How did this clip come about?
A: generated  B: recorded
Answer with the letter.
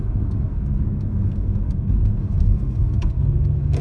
A